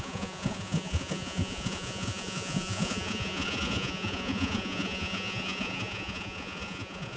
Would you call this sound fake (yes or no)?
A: yes